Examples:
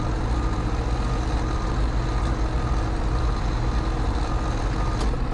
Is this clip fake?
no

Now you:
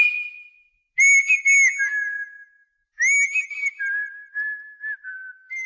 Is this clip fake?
no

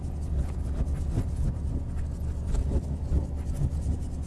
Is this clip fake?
no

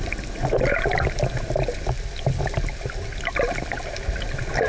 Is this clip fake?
no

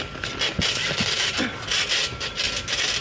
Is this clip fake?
no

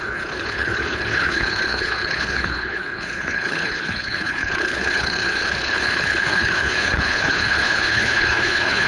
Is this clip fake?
yes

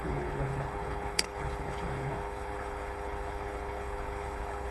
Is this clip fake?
yes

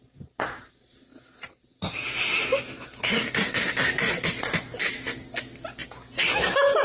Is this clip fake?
no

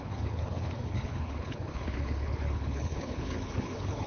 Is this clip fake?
yes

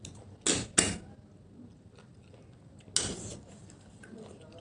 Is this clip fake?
no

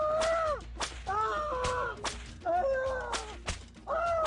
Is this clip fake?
no